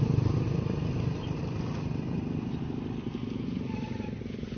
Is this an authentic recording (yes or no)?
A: yes